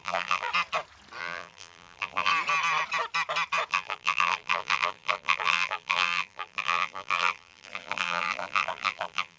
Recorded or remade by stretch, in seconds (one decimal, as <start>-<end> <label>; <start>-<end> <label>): 0.0-0.5 remade; 0.5-1.2 recorded; 1.2-2.3 remade; 2.3-3.7 recorded; 3.7-9.4 remade